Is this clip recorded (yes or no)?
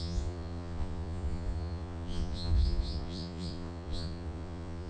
no